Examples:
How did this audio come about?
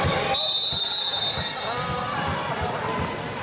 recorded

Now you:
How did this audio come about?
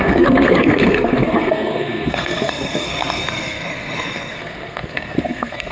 remade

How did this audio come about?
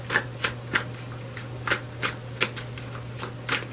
recorded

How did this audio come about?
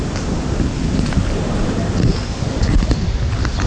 recorded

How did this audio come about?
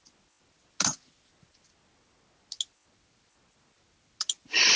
recorded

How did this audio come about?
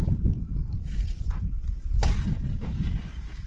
remade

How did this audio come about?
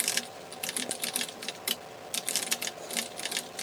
remade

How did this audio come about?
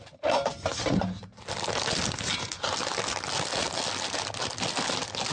recorded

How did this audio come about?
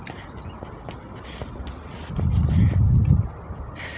recorded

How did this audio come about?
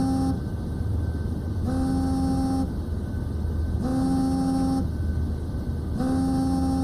recorded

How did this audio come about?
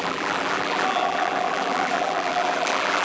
remade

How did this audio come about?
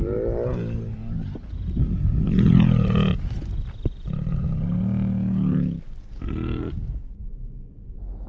recorded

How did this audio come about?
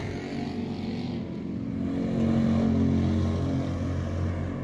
recorded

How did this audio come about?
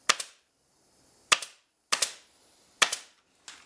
recorded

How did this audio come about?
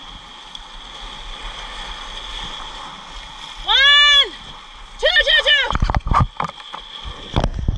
recorded